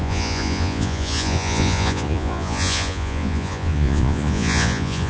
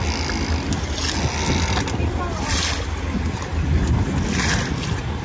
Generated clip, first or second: first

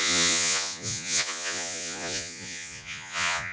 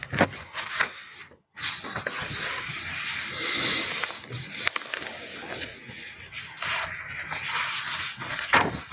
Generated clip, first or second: first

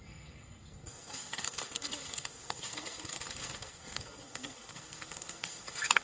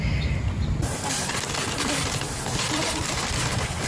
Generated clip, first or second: first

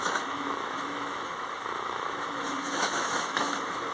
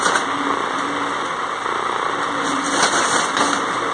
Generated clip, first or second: first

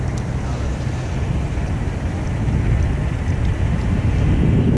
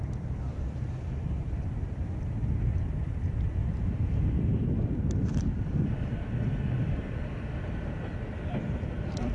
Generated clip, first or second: second